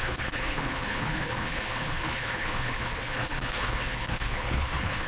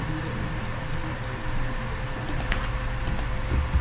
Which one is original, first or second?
second